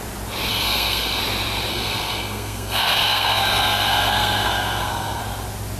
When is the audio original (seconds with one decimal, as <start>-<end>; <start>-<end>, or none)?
0.0-0.5; 1.2-1.7; 5.2-5.8